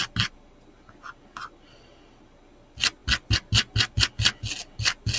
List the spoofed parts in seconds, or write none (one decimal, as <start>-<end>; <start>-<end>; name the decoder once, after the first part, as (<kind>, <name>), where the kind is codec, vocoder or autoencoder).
none